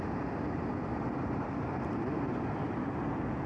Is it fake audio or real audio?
real